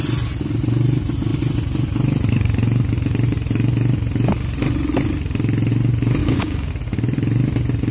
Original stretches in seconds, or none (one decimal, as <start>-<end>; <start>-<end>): 0.0-6.2; 6.7-7.9

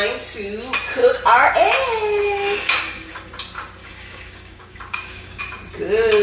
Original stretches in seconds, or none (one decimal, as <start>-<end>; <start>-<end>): 0.0-2.2; 3.2-3.8; 5.4-6.2

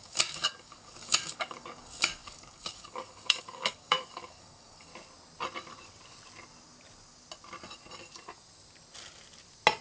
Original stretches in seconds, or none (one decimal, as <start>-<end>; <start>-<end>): 4.9-9.8

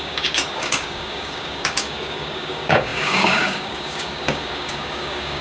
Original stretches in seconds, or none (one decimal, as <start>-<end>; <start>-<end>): none

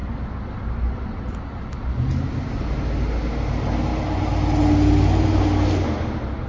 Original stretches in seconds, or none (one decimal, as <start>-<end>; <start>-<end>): 0.0-6.5

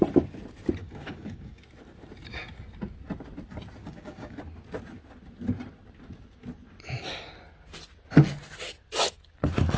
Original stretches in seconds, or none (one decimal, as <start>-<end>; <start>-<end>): 0.0-0.8; 1.6-3.8; 4.4-9.8

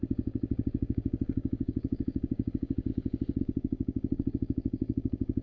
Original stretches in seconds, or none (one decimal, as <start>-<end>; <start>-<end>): 2.9-3.4